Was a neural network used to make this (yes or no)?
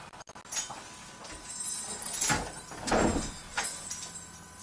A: no